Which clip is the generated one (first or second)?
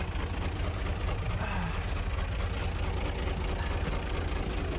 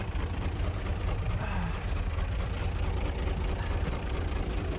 second